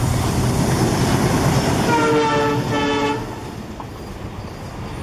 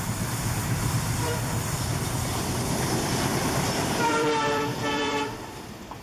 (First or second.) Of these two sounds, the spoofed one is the second